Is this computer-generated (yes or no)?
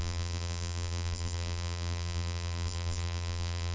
yes